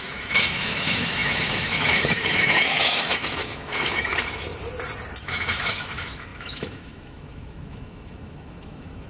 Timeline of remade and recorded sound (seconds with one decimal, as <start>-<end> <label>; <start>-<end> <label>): 0.0-4.5 remade; 4.5-5.2 recorded; 5.2-9.1 remade